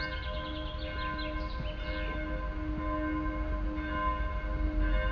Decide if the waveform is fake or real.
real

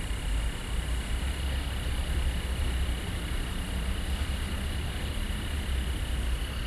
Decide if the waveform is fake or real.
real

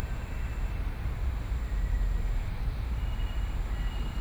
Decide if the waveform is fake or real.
fake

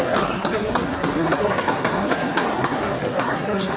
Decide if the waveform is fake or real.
fake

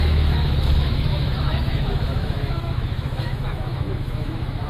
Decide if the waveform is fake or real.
fake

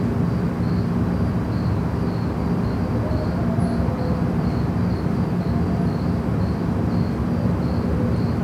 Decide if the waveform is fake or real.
real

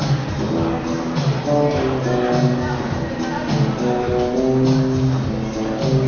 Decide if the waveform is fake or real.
real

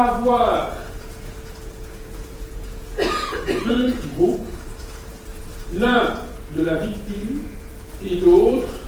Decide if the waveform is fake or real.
fake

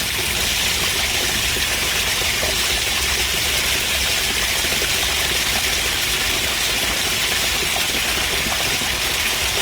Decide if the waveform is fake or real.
real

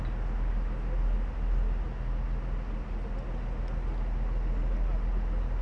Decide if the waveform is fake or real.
real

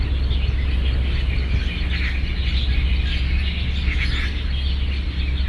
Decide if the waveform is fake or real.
real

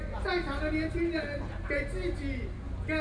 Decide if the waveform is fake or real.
real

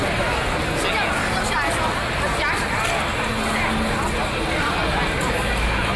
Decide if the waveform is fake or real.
real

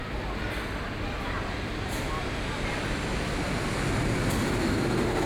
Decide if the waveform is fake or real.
real